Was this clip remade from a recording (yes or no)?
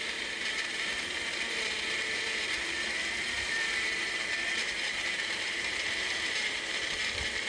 yes